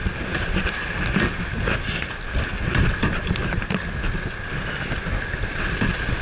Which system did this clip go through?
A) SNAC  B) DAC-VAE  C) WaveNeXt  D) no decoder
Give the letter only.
D